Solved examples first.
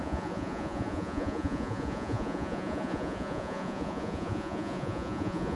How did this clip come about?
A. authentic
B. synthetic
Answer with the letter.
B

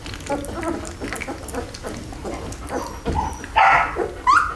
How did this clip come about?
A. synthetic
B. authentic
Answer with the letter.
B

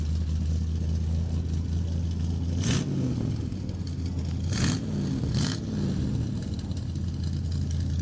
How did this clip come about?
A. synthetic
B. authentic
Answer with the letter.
B